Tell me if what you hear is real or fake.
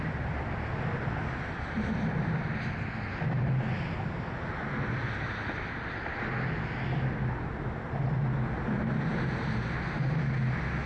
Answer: real